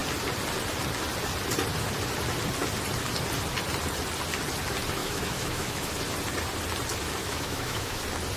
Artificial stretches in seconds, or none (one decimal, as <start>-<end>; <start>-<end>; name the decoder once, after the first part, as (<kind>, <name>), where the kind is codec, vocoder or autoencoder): 5.0-5.9 (autoencoder, DAC-VAE); 7.2-8.0